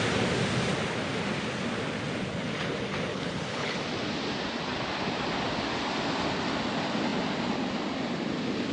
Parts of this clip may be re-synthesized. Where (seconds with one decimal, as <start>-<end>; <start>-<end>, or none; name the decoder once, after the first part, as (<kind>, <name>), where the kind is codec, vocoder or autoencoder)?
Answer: 3.1-3.8 (codec, HILCodec)